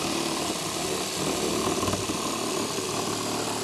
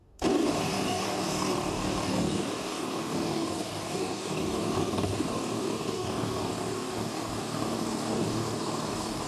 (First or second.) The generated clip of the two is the second